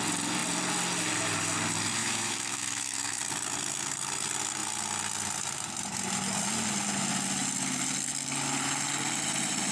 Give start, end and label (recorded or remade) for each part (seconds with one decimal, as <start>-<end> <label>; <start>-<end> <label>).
0.0-2.0 recorded; 2.0-3.2 remade; 3.2-9.7 recorded